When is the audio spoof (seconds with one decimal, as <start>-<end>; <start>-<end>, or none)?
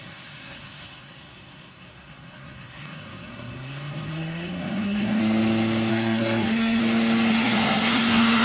0.0-5.2; 5.9-6.8; 7.3-8.4